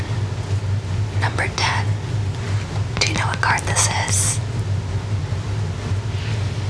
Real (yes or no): yes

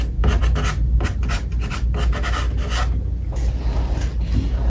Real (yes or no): yes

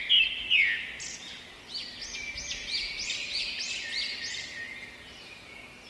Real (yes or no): yes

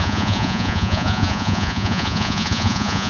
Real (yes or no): no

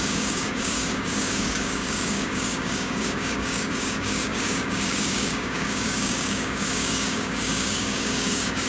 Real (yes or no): no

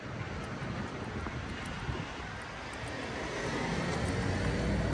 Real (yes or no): yes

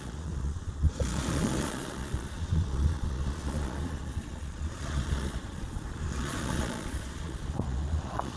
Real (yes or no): no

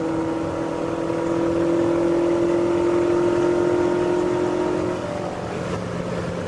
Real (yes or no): yes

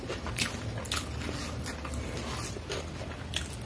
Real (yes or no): yes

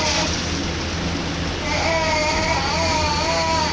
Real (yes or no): yes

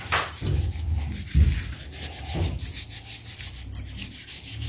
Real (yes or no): yes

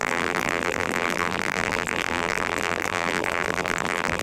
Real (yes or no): no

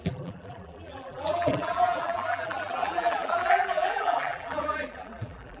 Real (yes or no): no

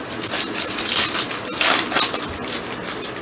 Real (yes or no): yes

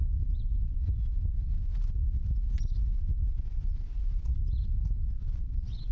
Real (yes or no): yes